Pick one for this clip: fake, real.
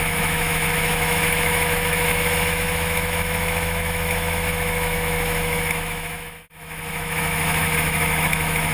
fake